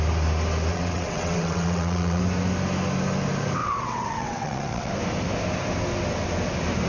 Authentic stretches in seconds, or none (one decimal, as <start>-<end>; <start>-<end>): 0.0-0.7; 2.2-3.6; 4.9-6.9